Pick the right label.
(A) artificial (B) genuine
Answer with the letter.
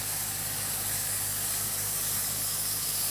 A